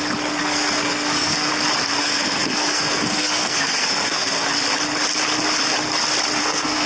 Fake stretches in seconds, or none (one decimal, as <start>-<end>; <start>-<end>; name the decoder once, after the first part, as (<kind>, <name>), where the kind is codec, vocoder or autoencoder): 0.4-1.5 (codec, SNAC); 2.0-4.5; 6.4-6.9